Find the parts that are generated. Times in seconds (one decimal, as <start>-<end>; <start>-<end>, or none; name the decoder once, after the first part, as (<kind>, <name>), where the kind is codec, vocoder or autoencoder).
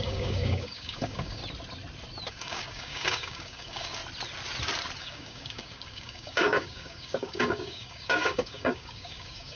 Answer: 0.0-1.4 (codec, DAC); 2.3-4.0; 5.0-9.6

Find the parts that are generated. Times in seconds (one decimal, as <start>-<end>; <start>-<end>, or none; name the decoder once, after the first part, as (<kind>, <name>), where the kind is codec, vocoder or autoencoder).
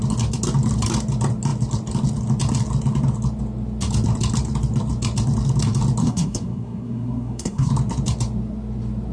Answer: 6.0-7.7 (codec, SNAC)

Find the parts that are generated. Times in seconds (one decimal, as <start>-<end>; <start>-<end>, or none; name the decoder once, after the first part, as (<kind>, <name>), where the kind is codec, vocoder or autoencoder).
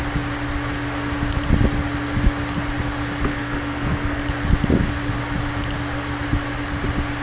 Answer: 3.3-4.2 (codec, SNAC)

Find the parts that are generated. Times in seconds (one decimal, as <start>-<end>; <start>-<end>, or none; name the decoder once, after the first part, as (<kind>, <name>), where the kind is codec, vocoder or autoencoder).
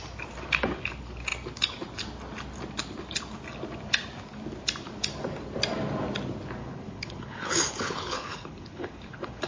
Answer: 6.6-9.5 (codec, HILCodec)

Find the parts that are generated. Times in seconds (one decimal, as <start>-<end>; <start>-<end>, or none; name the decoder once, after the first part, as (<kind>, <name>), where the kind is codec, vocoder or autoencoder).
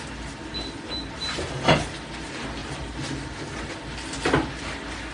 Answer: none